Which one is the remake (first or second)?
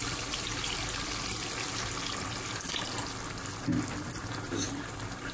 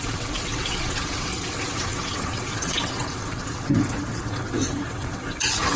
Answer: second